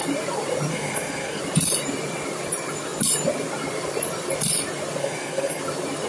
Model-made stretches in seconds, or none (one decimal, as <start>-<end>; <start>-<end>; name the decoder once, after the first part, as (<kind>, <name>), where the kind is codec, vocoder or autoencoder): 0.7-1.4 (codec, SNAC); 5.0-5.6